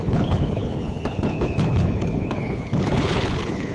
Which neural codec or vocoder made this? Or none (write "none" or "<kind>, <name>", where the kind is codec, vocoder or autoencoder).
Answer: codec, HILCodec